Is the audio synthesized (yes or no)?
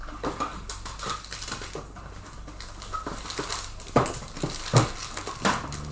no